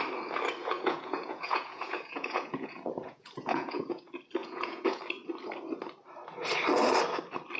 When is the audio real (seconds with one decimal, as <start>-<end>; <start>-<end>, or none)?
0.0-0.6; 4.0-4.4; 5.0-7.6